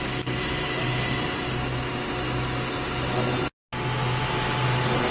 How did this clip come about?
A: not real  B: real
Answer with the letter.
B